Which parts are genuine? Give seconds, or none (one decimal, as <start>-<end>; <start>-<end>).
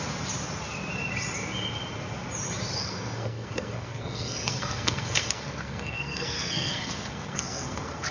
0.0-2.8